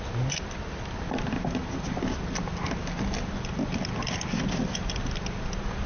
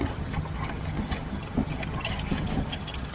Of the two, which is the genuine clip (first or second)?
first